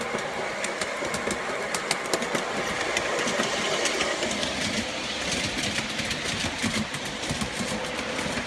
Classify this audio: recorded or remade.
recorded